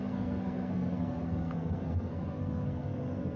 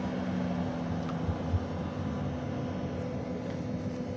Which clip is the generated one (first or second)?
first